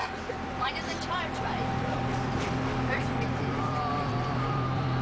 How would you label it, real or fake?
fake